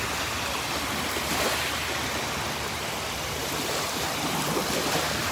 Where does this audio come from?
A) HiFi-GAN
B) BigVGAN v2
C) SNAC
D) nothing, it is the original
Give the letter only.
B